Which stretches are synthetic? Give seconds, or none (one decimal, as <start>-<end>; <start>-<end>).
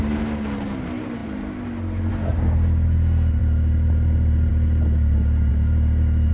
none